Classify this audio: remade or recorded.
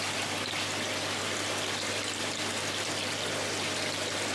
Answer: recorded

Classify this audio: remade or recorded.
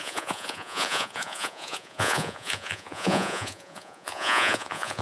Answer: remade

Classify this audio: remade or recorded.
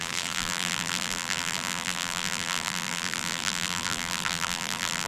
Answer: remade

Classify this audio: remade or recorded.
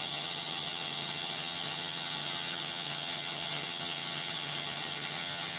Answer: remade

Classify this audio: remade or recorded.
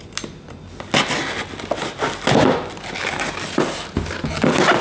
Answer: recorded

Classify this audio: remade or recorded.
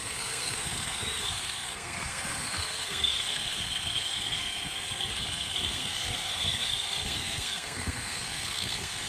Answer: remade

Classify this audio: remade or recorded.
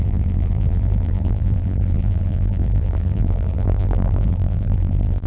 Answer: remade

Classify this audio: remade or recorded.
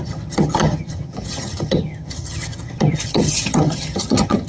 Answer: remade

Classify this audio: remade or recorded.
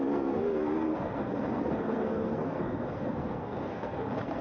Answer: remade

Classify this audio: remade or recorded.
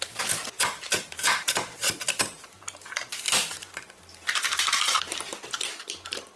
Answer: remade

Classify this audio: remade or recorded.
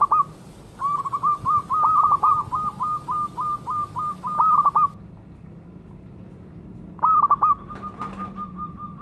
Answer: recorded